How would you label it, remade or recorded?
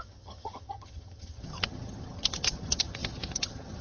remade